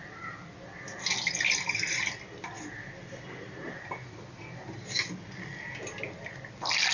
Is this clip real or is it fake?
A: real